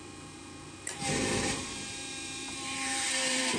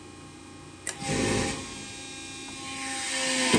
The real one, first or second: second